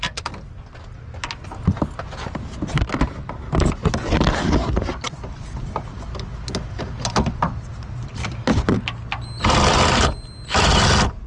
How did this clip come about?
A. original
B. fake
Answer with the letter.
A